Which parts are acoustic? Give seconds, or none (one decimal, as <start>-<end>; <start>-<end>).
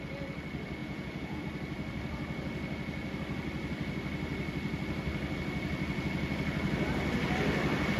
0.0-0.8; 1.4-8.0